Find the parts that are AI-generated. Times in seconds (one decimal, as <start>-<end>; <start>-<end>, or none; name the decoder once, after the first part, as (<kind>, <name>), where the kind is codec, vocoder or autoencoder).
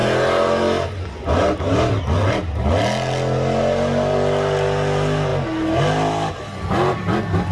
none